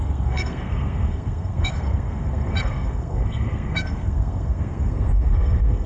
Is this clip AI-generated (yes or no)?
yes